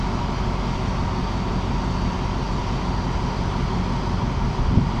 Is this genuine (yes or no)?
yes